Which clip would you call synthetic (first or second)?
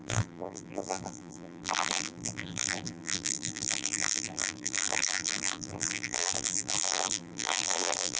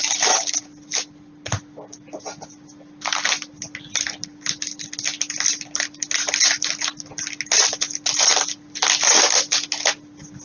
first